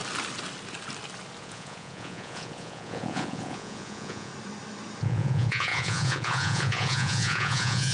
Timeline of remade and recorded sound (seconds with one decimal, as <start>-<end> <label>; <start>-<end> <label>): 0.0-1.4 recorded; 1.4-4.3 remade; 4.3-5.0 recorded; 5.0-7.9 remade